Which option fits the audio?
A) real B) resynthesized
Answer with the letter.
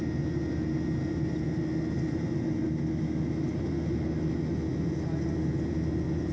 A